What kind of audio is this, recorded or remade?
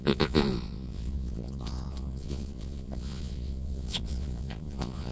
remade